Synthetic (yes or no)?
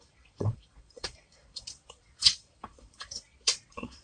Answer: yes